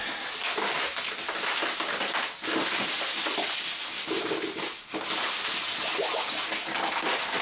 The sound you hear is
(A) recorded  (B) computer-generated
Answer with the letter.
A